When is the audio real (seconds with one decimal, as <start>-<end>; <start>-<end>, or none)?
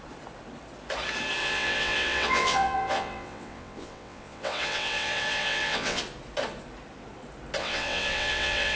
0.0-1.4; 6.0-7.6